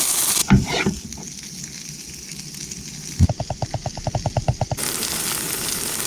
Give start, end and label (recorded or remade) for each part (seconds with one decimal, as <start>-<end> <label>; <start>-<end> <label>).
0.0-6.1 recorded